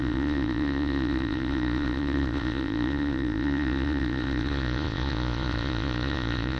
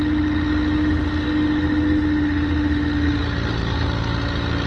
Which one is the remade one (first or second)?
first